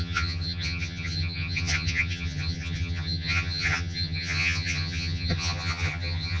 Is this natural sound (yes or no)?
no